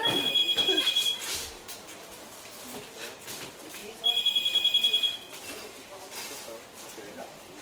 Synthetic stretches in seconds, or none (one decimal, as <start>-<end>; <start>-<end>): 0.4-2.0